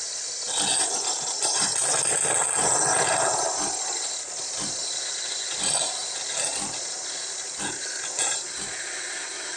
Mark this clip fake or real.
real